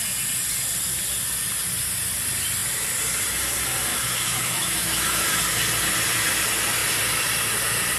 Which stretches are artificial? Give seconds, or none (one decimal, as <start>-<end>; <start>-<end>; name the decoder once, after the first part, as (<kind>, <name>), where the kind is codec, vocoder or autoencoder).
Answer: 3.9-5.4 (autoencoder, DAC-VAE)